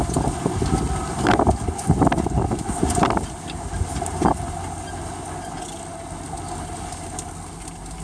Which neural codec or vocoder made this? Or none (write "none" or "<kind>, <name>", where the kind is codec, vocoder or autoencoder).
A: none